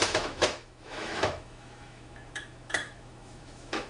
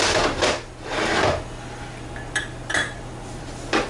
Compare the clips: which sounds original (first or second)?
second